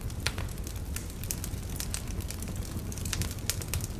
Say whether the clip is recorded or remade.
recorded